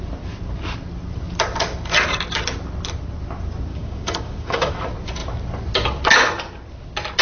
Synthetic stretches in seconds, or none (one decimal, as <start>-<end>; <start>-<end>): 3.7-4.7